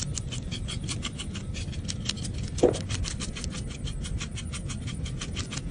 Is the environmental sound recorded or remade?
recorded